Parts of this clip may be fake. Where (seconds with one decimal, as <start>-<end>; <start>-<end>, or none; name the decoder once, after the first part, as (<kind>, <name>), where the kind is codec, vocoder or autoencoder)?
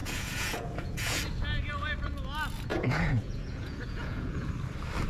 0.0-1.2 (vocoder, Vocos); 2.7-4.5